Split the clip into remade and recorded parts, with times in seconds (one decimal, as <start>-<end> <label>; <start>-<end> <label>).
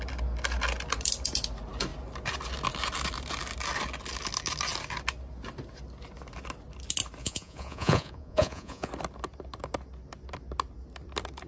0.0-7.2 recorded; 7.2-8.9 remade; 8.9-11.5 recorded